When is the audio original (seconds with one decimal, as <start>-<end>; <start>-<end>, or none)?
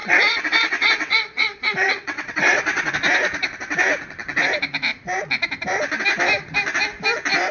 2.9-7.5